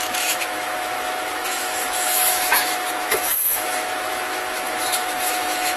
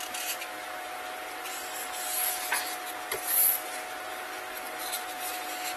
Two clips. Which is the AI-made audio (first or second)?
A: first